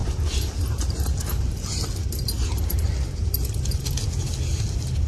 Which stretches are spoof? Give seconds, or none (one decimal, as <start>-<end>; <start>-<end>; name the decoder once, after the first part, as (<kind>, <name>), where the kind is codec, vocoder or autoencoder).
none